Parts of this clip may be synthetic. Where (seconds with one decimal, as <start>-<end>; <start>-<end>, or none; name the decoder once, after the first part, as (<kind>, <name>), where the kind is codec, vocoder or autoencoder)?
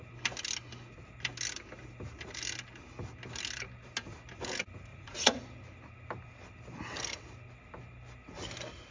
4.9-5.4 (vocoder, Vocos)